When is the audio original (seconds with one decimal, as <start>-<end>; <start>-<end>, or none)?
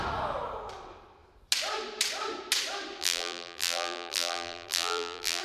0.0-3.0